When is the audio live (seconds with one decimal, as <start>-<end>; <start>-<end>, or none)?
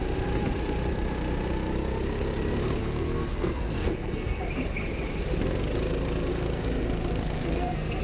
0.0-2.8; 4.4-6.3